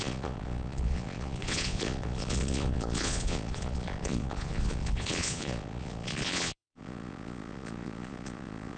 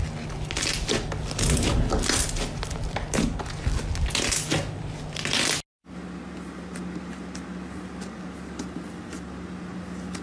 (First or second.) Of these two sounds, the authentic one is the second